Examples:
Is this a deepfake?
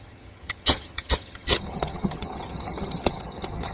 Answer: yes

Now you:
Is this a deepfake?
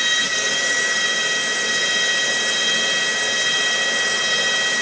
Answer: no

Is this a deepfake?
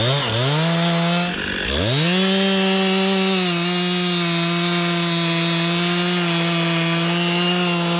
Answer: no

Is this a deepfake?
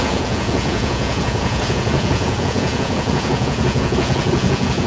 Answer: yes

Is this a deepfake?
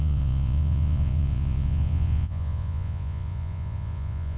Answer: yes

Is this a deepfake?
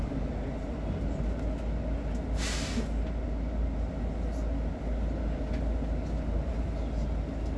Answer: no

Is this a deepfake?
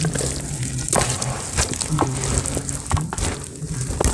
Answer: no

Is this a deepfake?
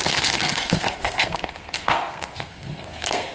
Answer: yes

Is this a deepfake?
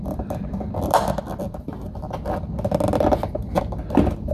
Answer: no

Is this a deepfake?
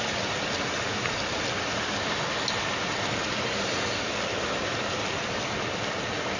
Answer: no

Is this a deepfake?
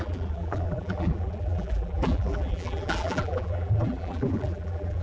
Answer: yes